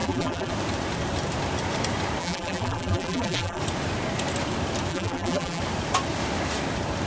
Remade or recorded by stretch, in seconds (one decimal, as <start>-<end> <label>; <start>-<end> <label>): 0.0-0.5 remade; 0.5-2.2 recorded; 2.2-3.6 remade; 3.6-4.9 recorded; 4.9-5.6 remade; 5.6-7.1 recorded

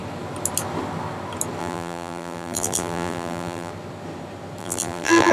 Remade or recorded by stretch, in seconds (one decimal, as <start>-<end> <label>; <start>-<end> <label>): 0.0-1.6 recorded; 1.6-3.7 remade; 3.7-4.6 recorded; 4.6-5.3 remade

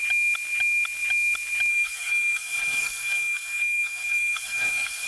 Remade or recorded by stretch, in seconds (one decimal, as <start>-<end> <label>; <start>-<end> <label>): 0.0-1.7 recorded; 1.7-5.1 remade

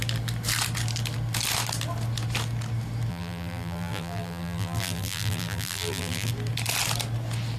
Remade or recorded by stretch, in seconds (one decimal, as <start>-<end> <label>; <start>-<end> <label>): 0.0-3.1 recorded; 3.1-6.3 remade; 6.3-7.6 recorded